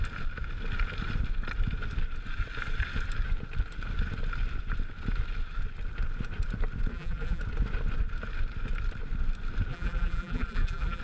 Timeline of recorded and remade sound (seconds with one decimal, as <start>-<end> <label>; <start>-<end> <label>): 0.0-6.9 recorded; 6.9-7.4 remade; 7.4-9.7 recorded; 9.7-11.0 remade